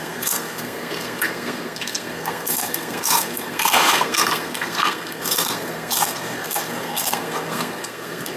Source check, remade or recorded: remade